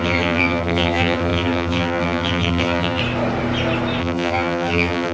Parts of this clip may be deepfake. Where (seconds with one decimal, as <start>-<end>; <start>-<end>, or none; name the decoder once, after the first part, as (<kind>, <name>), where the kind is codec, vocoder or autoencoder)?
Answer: 0.0-3.0 (vocoder, BigVGAN v2); 4.0-5.1